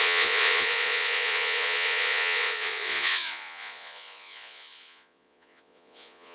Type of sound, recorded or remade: remade